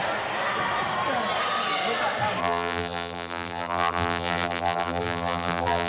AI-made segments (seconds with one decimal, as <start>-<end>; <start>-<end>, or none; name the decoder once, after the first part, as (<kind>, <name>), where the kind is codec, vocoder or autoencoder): 2.4-5.9 (vocoder, BigVGAN v2)